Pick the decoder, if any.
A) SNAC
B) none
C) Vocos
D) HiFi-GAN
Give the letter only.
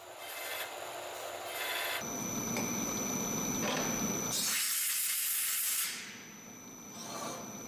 B